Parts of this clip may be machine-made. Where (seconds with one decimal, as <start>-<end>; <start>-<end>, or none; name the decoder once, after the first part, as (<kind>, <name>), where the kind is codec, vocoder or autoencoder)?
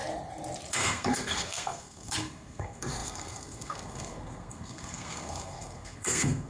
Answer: 0.7-6.5 (codec, SNAC)